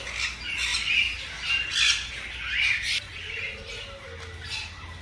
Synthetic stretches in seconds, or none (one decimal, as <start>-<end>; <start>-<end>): none